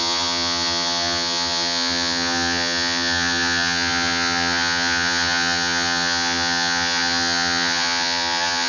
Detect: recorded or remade remade